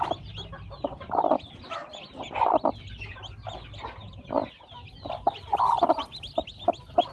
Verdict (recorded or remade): recorded